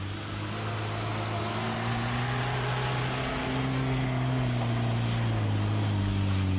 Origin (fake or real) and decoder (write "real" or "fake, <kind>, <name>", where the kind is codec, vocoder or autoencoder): real